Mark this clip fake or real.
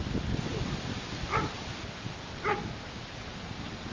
real